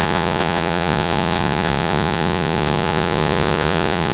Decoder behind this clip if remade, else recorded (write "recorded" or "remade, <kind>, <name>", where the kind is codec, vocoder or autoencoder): remade, vocoder, Vocos